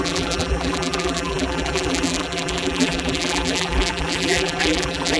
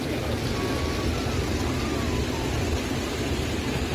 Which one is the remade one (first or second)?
first